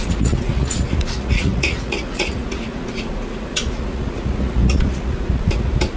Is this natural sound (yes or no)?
no